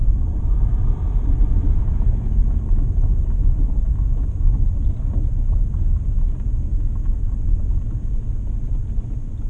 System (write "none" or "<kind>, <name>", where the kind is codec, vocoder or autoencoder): none